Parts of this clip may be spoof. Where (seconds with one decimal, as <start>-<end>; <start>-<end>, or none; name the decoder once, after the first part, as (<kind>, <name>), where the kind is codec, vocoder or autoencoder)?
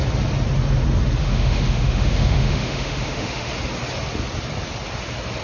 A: 1.2-3.5 (autoencoder, DAC-VAE)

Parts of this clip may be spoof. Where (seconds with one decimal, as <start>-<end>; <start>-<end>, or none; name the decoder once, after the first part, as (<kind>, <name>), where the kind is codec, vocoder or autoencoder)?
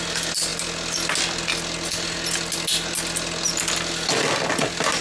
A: none